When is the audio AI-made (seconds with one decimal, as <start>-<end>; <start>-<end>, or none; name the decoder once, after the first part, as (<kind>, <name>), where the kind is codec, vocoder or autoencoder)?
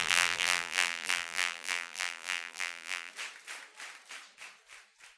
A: 0.0-3.1 (vocoder, BigVGAN v2)